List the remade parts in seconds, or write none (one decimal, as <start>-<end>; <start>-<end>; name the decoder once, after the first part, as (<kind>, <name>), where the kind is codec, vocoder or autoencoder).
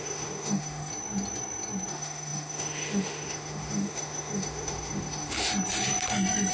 0.0-0.9 (autoencoder, DAC-VAE); 1.9-5.5